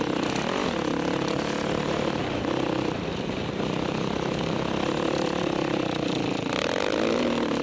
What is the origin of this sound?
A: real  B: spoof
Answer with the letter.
A